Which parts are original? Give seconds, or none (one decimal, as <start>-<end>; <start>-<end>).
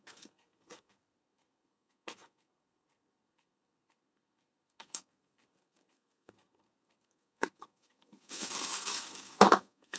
none